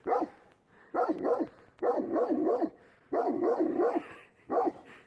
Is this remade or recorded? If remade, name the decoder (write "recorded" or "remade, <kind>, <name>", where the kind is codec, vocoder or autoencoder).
recorded